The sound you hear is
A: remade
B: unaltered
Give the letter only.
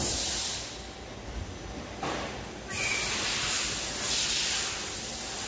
B